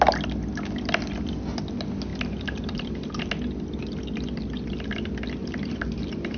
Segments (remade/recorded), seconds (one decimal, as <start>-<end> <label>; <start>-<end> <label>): 0.0-2.1 recorded; 2.1-3.3 remade; 3.3-5.4 recorded; 5.4-6.4 remade